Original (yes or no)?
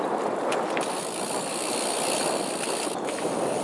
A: yes